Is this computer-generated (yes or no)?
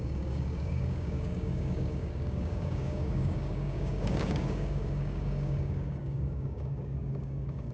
yes